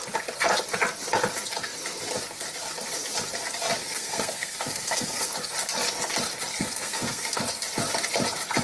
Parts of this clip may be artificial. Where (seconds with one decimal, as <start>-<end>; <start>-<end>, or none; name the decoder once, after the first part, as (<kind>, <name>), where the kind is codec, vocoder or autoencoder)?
3.8-5.3 (codec, SNAC); 6.5-7.4